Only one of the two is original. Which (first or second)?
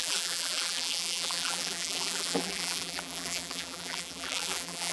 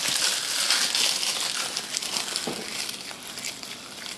second